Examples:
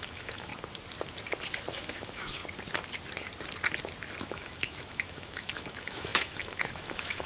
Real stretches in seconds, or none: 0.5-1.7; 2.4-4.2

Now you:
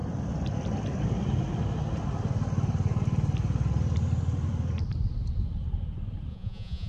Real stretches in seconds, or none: 0.0-6.3

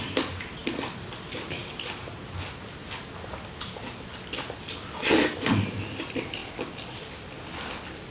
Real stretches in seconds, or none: 0.0-8.1

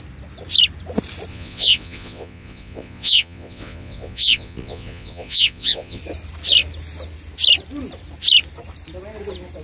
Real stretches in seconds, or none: 0.0-1.3; 6.0-9.6

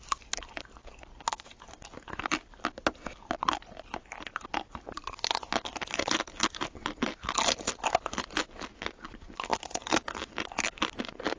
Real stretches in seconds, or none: 0.0-11.4